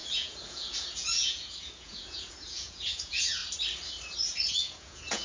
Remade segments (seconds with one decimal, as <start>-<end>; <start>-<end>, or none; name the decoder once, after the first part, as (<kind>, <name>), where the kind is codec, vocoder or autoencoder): 0.0-3.4 (vocoder, Vocos); 4.5-5.2